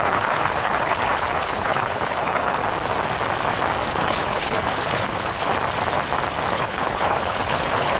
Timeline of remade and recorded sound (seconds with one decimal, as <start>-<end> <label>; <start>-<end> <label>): 0.0-2.6 remade; 2.6-3.9 recorded; 3.9-5.5 remade; 5.5-6.5 recorded; 6.5-8.0 remade